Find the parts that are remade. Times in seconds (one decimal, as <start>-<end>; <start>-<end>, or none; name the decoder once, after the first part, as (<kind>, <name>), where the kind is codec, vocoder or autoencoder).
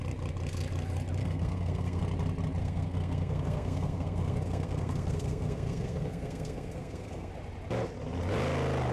1.2-2.0 (codec, SNAC); 2.6-7.3